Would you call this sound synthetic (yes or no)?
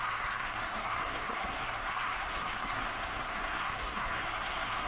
yes